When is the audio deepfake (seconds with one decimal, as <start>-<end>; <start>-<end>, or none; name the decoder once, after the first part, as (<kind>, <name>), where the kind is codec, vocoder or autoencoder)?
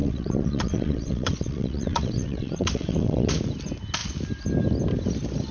0.0-3.3 (vocoder, WaveNeXt)